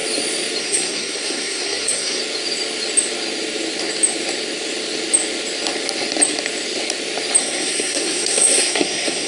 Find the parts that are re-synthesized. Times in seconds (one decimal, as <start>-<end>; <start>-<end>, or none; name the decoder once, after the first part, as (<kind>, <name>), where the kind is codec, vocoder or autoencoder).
0.6-2.2 (codec, SNAC); 7.4-9.3